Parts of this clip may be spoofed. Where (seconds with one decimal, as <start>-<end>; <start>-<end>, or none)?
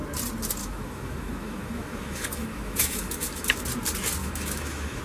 0.6-3.6; 4.2-5.0